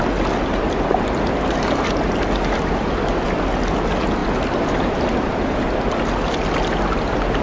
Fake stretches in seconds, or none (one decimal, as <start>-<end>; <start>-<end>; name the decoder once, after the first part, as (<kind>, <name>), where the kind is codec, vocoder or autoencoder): none